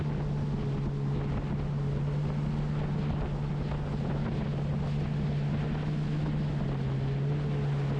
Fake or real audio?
real